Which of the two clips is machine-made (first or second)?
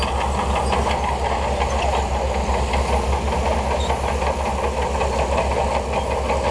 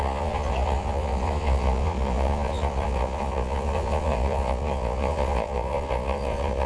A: second